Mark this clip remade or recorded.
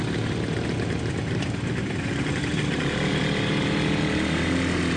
recorded